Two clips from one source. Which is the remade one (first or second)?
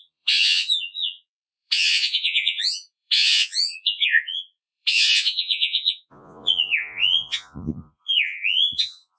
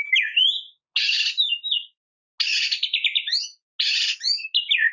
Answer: first